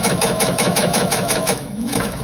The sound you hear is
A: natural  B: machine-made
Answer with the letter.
B